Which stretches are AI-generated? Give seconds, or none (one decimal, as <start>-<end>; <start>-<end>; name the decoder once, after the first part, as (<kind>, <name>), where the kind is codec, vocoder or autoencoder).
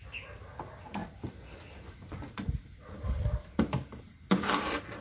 none